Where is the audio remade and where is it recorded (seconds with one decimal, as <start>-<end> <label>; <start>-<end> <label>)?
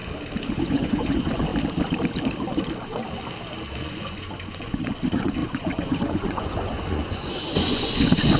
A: 0.0-0.5 recorded; 0.5-1.5 remade; 1.5-3.8 recorded; 3.8-8.4 remade